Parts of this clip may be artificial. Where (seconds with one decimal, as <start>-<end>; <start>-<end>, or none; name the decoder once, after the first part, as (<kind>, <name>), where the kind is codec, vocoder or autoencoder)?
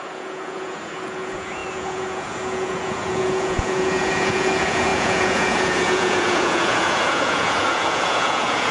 0.0-8.7 (vocoder, Vocos)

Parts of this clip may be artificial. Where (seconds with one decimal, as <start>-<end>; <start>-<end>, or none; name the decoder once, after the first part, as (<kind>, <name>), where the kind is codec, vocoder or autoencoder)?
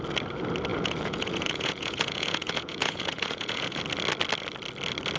0.7-3.8 (vocoder, Vocos)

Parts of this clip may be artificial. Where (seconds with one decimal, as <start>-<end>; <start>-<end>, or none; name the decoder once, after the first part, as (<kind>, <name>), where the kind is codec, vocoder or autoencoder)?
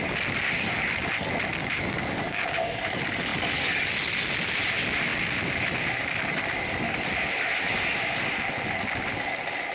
1.6-2.8 (codec, DAC)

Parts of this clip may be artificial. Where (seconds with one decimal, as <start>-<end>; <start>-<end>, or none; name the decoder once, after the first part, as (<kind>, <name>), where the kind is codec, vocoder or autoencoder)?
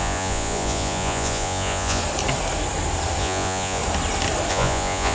0.0-2.0 (vocoder, Vocos); 3.2-3.8; 4.5-5.1